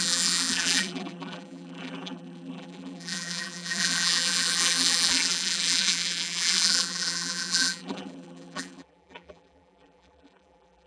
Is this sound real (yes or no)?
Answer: no